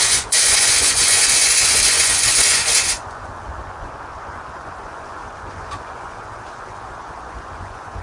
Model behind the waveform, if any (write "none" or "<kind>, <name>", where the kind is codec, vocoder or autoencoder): vocoder, Vocos